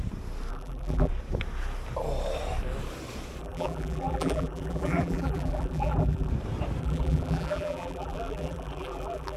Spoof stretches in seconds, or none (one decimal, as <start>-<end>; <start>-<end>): 0.5-1.1; 3.4-6.3; 6.8-9.4